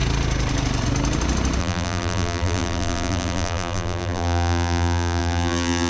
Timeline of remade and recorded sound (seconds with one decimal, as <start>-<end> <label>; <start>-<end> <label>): 0.0-1.6 recorded; 1.6-5.9 remade